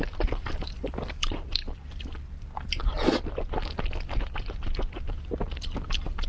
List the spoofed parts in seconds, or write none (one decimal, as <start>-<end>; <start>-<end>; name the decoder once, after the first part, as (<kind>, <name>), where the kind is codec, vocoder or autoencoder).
none

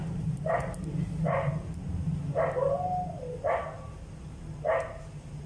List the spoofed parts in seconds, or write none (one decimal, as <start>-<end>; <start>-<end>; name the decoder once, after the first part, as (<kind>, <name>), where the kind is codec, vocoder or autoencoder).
0.0-2.1 (vocoder, BigVGAN v2)